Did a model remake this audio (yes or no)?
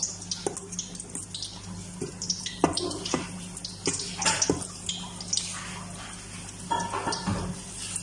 no